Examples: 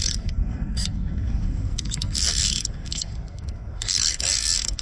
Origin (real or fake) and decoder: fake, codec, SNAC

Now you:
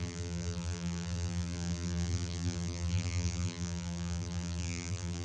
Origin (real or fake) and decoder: fake, vocoder, BigVGAN v2